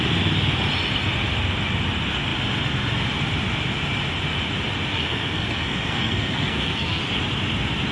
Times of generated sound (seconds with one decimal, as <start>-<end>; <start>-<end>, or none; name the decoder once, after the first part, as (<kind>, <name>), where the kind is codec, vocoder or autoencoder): 4.9-7.0 (codec, SNAC)